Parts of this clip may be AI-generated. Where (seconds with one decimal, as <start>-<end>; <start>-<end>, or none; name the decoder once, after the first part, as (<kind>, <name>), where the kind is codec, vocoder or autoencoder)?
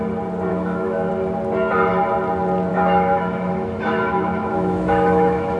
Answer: 0.5-1.1 (autoencoder, DAC-VAE); 2.7-5.6